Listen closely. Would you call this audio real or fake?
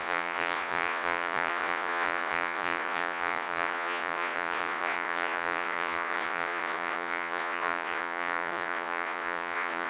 fake